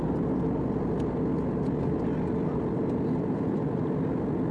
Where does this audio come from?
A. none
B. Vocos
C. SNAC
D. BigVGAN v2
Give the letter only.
A